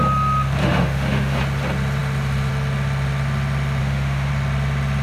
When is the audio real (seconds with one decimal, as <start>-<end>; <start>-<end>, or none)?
0.0-0.6; 1.4-3.8; 4.3-5.0